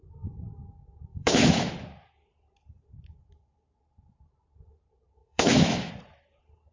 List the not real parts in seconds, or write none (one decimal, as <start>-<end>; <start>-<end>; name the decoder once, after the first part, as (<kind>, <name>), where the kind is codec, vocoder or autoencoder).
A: 1.1-1.7 (autoencoder, DAC-VAE); 5.2-5.9